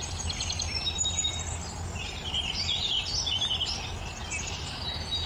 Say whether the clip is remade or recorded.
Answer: recorded